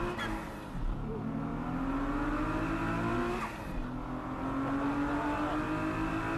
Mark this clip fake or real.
real